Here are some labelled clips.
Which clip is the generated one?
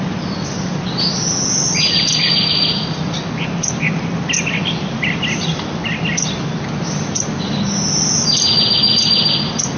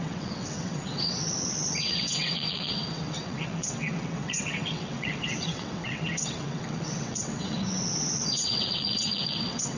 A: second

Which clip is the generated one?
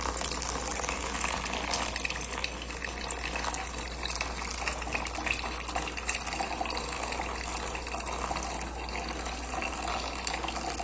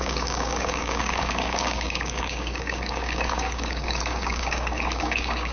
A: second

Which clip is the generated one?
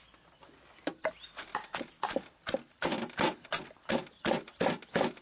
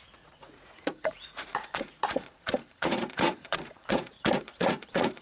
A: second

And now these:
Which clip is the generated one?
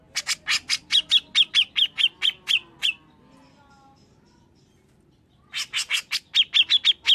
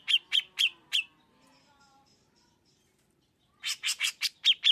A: second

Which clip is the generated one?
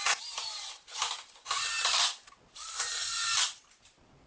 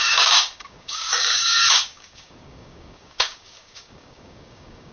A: second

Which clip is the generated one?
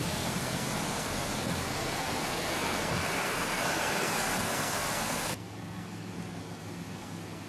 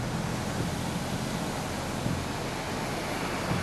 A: first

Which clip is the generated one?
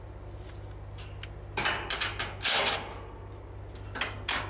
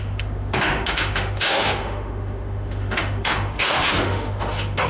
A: second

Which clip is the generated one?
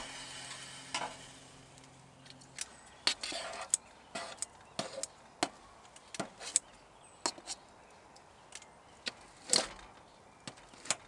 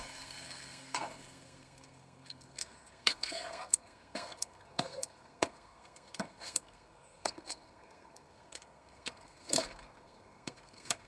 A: second